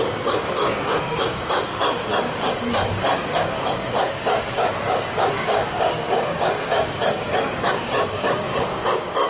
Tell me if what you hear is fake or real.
fake